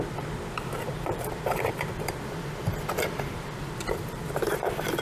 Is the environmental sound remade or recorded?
remade